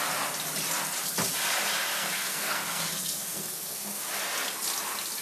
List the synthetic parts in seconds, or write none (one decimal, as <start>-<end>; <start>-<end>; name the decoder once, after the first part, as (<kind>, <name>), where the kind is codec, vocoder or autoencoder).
1.9-4.2 (codec, SNAC)